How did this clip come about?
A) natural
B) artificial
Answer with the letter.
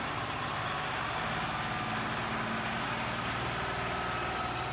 A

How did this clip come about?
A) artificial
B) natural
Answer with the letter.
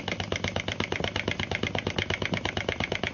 B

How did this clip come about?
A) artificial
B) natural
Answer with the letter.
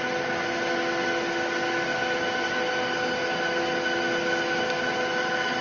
B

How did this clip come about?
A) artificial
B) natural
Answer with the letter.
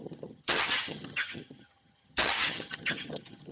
A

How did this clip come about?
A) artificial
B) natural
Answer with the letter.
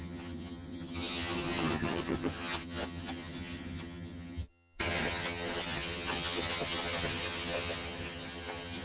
A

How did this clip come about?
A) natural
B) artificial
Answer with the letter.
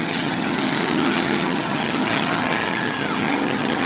B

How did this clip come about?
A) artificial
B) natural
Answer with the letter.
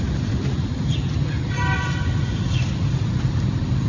B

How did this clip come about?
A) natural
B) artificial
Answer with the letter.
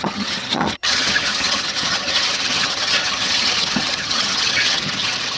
B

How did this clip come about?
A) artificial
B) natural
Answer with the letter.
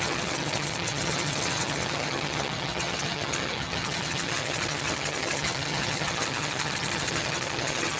A